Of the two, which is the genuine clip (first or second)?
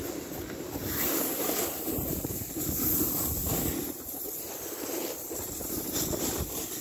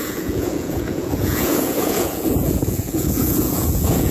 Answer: first